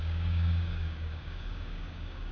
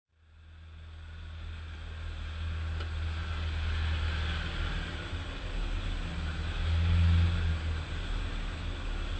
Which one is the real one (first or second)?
second